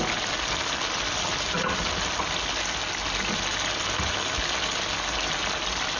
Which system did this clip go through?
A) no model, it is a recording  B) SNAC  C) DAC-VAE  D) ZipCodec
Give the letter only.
A